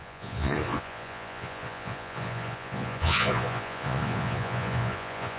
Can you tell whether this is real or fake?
fake